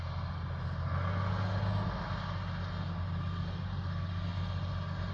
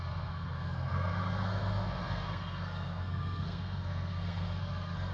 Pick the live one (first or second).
first